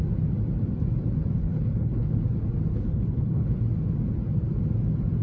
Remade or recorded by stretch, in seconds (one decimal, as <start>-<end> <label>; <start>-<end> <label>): 0.0-1.4 recorded; 1.4-2.1 remade; 2.1-2.7 recorded; 2.7-3.6 remade; 3.6-5.2 recorded